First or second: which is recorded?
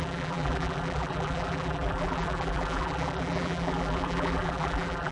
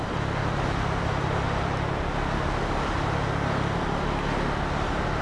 second